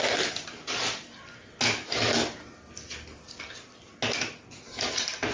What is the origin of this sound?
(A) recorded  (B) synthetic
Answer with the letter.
A